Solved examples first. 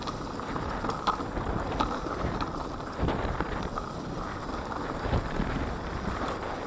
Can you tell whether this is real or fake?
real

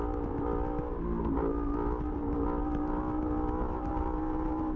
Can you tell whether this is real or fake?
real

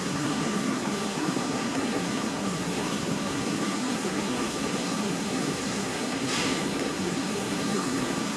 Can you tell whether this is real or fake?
fake